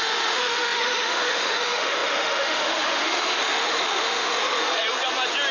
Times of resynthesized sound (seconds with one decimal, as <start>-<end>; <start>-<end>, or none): 0.0-4.6